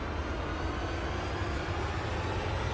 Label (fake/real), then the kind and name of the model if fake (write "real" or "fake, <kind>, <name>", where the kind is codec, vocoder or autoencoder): real